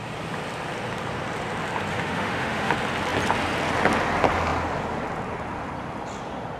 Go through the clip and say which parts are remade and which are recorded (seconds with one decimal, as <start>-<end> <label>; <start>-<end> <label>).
0.0-1.9 recorded; 1.9-2.7 remade; 2.7-6.6 recorded